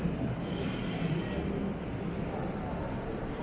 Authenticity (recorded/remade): recorded